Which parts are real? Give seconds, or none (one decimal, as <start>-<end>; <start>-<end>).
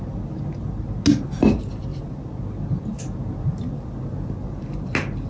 0.0-5.3